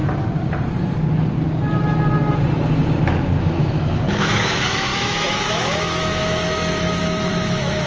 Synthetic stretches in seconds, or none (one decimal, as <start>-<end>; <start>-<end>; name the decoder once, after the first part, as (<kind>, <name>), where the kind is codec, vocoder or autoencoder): 3.4-7.9 (autoencoder, DAC-VAE)